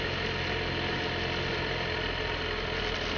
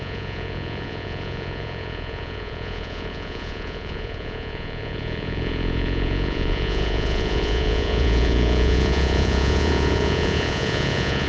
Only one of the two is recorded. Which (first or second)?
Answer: first